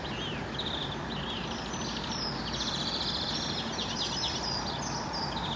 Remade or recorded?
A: recorded